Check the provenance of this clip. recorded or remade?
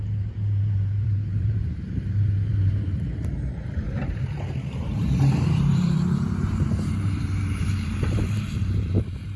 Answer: remade